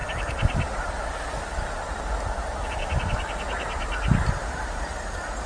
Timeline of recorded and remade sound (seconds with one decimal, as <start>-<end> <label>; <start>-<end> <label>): 0.0-0.9 remade; 0.9-2.8 recorded; 2.8-4.1 remade; 4.1-5.5 recorded

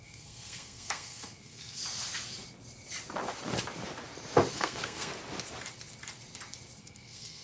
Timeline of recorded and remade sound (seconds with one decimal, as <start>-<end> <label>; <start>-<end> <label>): 0.0-1.8 remade; 1.8-4.5 recorded; 4.5-5.1 remade; 5.1-6.8 recorded; 6.8-7.4 remade

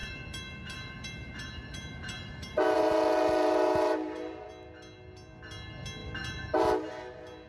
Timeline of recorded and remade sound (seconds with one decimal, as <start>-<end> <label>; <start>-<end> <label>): 0.0-4.5 remade; 4.5-6.0 recorded; 6.0-6.9 remade; 6.9-7.5 recorded

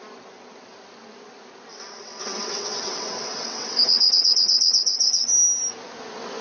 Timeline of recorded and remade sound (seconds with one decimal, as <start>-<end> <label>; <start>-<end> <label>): 0.0-1.7 recorded; 1.7-5.3 remade; 5.3-6.4 recorded

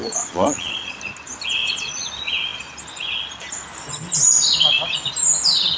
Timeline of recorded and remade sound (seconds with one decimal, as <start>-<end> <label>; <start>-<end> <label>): 0.0-1.0 remade; 1.0-1.6 recorded; 1.6-2.1 remade; 2.1-5.8 recorded

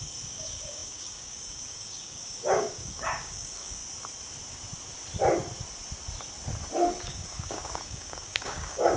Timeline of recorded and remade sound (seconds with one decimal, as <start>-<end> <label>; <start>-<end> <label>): 0.0-3.8 remade; 3.8-7.0 recorded; 7.0-9.0 remade

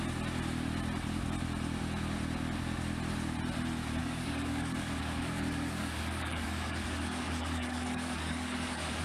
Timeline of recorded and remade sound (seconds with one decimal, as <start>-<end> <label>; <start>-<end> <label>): 0.0-4.0 recorded; 4.0-9.0 remade

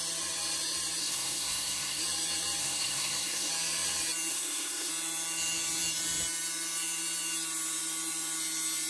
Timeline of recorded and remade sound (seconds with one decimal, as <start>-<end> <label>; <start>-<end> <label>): 0.0-1.0 recorded; 1.0-2.0 remade; 2.0-2.6 recorded; 2.6-3.5 remade; 3.5-4.3 recorded; 4.3-4.9 remade; 4.9-8.9 recorded